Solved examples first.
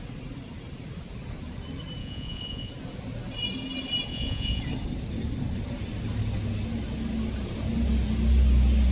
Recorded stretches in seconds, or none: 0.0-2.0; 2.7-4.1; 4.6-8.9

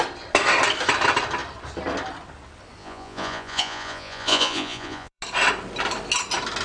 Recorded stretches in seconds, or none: 0.0-2.8; 5.2-6.6